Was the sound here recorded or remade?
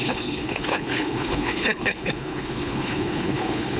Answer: remade